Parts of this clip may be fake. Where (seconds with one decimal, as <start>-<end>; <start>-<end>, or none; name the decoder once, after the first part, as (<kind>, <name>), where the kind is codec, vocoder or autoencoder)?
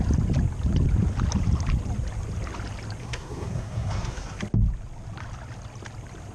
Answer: 3.0-4.4 (codec, SNAC)